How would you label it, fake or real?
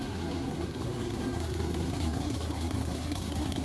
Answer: fake